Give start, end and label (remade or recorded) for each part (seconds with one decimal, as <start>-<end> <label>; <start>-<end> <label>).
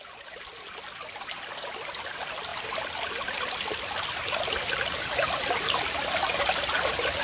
0.0-7.2 recorded